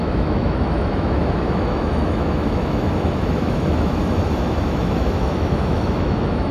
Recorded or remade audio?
remade